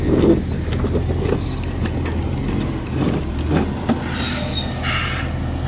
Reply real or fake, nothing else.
real